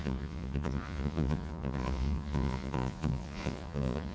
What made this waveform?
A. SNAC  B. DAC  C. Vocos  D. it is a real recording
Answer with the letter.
C